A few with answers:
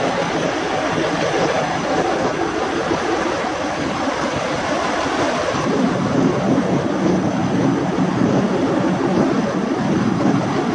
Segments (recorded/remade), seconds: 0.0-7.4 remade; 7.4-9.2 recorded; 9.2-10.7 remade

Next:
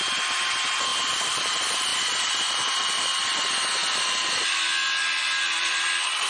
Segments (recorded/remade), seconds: 0.0-0.9 recorded; 0.9-1.4 remade; 1.4-1.9 recorded; 1.9-3.0 remade; 3.0-3.8 recorded; 3.8-6.3 remade

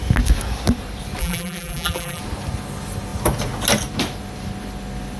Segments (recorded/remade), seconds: 0.0-1.2 recorded; 1.2-2.2 remade; 2.2-5.2 recorded

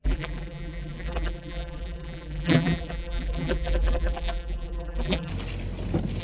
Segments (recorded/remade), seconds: 0.0-5.3 remade; 5.3-6.2 recorded